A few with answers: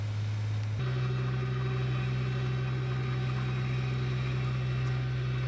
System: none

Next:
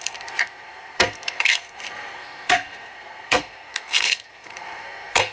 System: codec, SNAC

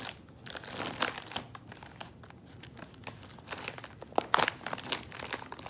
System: none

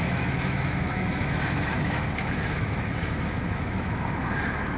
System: autoencoder, DAC-VAE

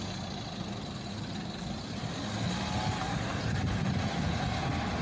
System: none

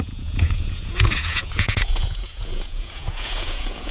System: vocoder, Vocos